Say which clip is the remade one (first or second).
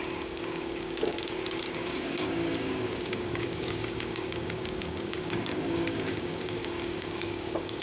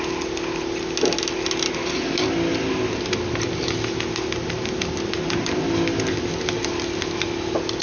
first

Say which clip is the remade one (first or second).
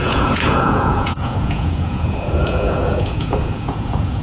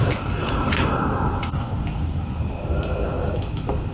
first